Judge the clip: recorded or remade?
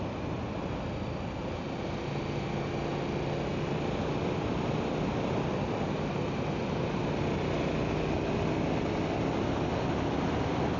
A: recorded